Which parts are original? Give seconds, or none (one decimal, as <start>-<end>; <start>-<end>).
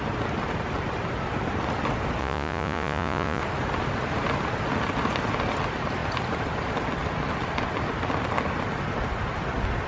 0.0-2.2; 3.4-9.9